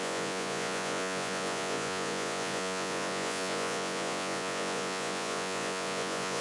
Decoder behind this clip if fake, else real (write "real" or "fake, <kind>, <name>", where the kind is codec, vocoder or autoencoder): fake, vocoder, Vocos